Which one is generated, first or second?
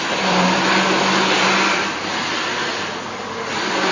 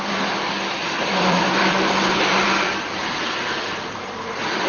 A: second